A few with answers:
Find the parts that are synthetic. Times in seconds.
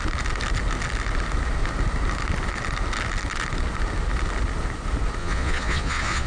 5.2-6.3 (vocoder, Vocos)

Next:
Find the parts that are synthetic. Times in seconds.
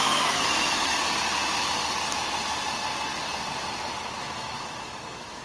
0.0-1.0 (autoencoder, DAC-VAE); 4.2-5.4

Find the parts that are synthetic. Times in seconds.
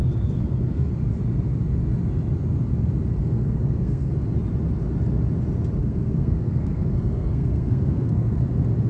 0.0-0.9 (codec, SNAC); 3.2-4.1; 5.8-8.4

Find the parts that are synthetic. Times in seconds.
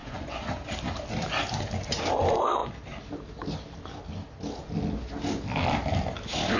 0.0-0.5 (vocoder, Vocos)